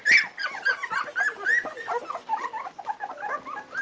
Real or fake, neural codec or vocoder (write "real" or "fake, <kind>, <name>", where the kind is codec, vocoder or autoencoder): real